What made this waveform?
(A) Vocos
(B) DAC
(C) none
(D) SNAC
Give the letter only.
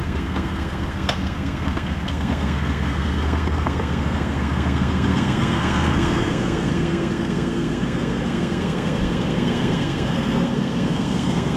D